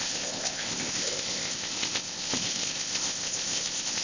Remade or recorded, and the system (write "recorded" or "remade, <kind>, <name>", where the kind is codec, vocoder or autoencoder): remade, codec, ZipCodec